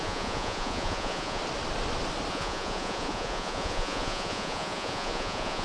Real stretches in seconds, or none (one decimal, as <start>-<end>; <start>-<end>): 1.4-2.3